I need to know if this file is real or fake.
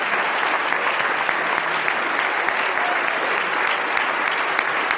real